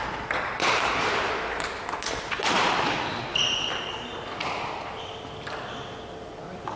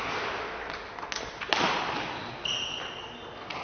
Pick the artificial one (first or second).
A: first